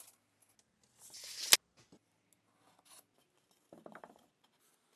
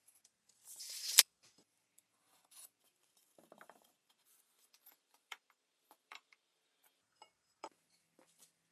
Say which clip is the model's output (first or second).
second